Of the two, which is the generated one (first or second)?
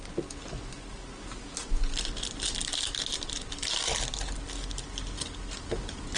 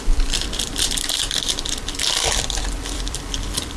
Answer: second